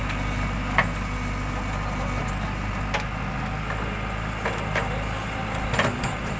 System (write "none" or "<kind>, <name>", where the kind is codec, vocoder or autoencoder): none